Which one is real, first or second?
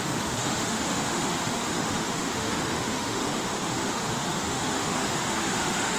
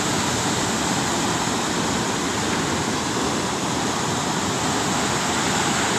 second